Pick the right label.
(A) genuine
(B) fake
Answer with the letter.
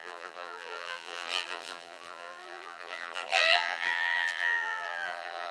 B